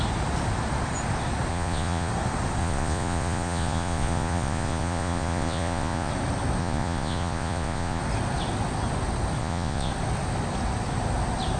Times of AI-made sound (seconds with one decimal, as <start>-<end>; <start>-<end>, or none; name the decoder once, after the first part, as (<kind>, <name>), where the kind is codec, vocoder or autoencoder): 1.5-2.1 (vocoder, Vocos); 2.6-6.1; 6.6-8.0; 9.4-9.9